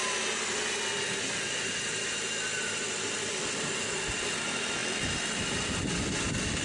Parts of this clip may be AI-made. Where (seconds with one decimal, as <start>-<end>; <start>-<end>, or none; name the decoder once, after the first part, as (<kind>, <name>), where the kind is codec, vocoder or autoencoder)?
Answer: none